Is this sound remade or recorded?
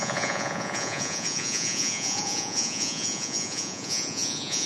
remade